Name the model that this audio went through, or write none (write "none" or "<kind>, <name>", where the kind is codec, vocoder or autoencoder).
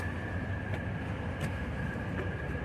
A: none